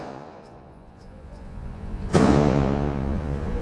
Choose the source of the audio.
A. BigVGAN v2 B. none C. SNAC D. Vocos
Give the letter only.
D